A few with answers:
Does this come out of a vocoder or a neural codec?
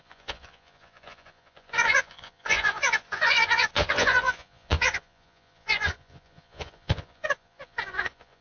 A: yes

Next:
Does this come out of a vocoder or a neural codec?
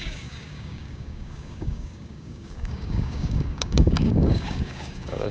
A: yes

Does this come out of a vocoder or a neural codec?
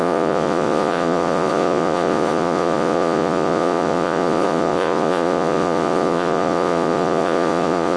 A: yes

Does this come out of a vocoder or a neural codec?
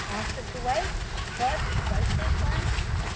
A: no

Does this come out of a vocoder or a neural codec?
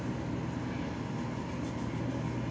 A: no